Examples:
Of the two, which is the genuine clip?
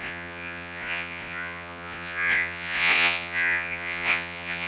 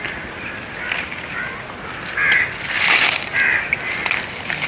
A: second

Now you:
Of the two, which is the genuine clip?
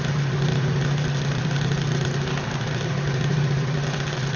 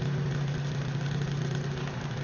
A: second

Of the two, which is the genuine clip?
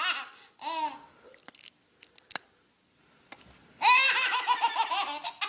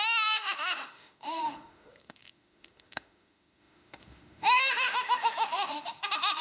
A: first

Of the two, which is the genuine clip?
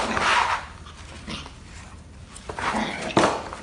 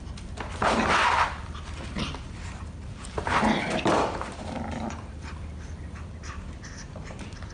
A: first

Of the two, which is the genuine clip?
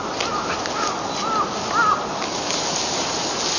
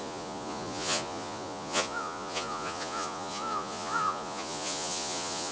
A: first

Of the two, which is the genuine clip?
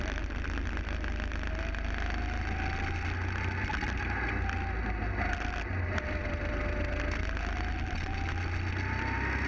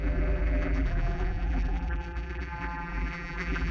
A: first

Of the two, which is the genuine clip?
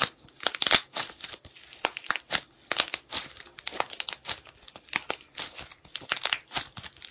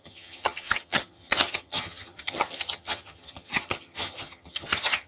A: first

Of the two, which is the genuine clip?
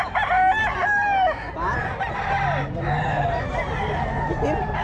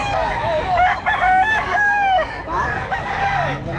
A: first